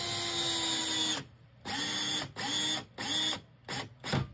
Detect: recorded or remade recorded